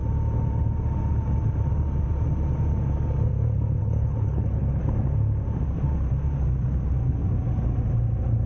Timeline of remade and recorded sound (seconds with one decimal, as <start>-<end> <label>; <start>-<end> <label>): 0.0-3.8 recorded; 3.8-4.8 remade; 4.8-8.5 recorded